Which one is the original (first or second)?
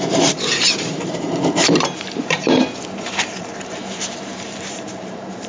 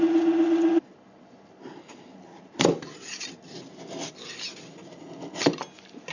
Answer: second